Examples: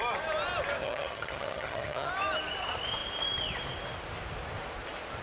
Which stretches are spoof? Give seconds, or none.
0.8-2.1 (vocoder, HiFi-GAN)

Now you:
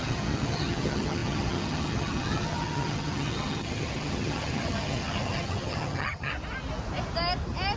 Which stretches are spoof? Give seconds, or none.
0.0-6.3 (vocoder, HiFi-GAN)

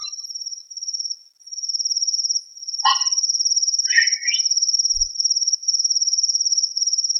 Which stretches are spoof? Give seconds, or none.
none

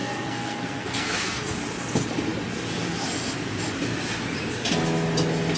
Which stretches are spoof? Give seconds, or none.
0.0-1.6 (codec, SNAC)

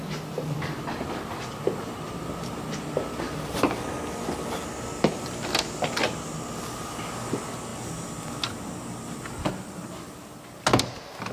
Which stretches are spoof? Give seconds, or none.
none

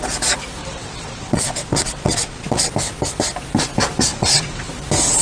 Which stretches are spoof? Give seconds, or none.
0.6-2.7 (vocoder, WaveNeXt); 4.1-4.7